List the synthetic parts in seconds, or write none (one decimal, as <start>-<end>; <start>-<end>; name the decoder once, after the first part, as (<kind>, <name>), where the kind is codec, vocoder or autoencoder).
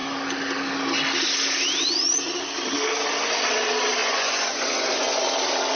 4.0-5.2 (vocoder, Vocos)